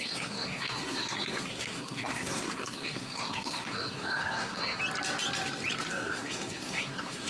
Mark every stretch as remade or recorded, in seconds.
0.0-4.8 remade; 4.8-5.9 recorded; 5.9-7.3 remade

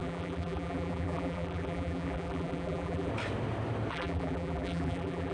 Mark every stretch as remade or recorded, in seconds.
0.0-3.1 remade; 3.1-3.9 recorded; 3.9-5.3 remade